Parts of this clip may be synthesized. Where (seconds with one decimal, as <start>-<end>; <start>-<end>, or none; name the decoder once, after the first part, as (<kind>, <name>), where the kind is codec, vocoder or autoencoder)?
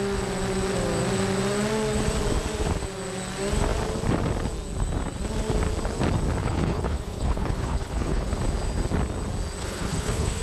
6.4-8.3 (codec, HILCodec); 9.6-10.4